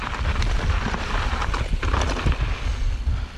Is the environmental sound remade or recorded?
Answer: recorded